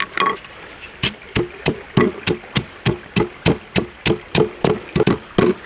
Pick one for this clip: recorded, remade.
recorded